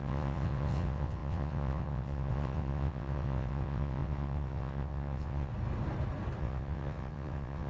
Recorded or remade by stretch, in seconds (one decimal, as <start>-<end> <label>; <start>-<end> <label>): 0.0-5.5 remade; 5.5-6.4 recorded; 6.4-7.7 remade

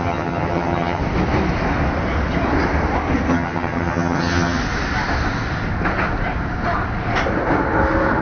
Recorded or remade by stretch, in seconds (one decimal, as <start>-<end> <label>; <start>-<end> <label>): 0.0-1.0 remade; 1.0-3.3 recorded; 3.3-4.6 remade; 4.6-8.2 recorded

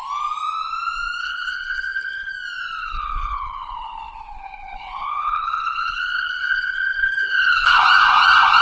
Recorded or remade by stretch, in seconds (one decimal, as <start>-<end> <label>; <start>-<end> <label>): 0.0-1.2 recorded; 1.2-2.3 remade; 2.3-2.8 recorded; 2.8-7.8 remade; 7.8-8.6 recorded